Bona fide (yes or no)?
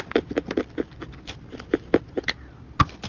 yes